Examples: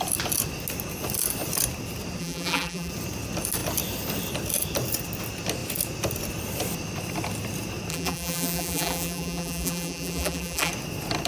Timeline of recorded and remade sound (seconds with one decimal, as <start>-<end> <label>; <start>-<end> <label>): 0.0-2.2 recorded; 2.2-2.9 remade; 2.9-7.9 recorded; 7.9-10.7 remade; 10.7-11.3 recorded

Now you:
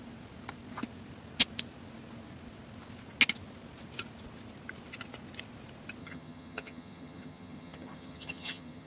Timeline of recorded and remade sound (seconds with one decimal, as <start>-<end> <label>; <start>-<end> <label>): 0.0-6.0 recorded; 6.0-8.9 remade

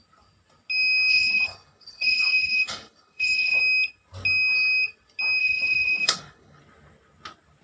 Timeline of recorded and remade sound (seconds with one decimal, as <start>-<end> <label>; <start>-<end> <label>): 0.0-1.1 recorded; 1.1-3.6 remade; 3.6-5.4 recorded; 5.4-6.6 remade; 6.6-7.6 recorded

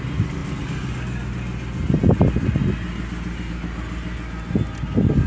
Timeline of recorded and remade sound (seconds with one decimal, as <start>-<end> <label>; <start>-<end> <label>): 0.0-5.3 recorded

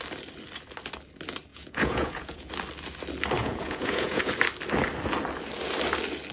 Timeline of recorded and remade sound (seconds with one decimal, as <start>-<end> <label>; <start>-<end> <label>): 0.0-1.5 recorded; 1.5-2.5 remade; 2.5-3.4 recorded; 3.4-4.3 remade; 4.3-6.3 recorded